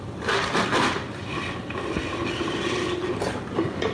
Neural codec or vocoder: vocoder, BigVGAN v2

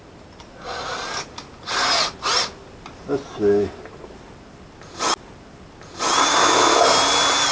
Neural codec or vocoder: none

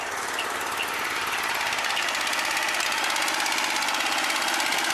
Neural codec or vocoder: none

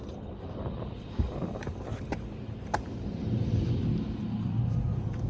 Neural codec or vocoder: vocoder, BigVGAN v2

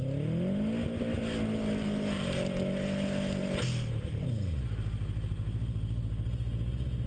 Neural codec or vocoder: none